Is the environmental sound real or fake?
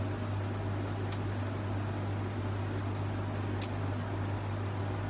real